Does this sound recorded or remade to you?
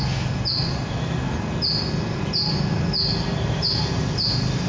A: recorded